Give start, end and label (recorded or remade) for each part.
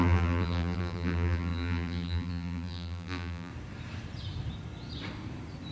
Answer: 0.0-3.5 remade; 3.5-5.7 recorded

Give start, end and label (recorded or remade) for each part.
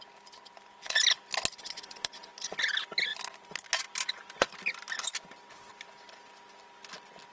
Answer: 0.0-1.6 recorded; 1.6-2.3 remade; 2.3-7.3 recorded